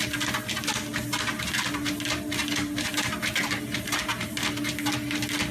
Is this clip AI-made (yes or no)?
no